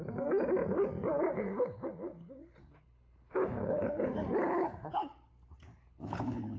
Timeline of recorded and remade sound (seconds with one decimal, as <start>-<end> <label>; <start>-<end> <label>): 0.0-1.3 recorded; 1.3-5.3 remade; 5.3-5.7 recorded; 5.7-6.6 remade